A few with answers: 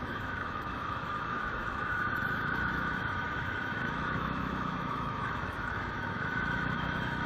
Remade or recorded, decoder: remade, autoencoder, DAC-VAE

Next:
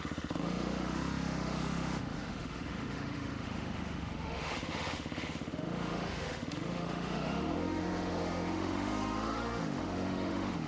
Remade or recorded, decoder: remade, autoencoder, DAC-VAE